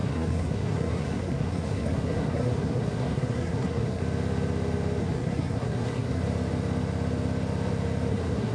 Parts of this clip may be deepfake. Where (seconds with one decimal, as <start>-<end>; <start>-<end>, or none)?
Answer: 0.0-4.0; 5.0-6.2; 8.1-8.5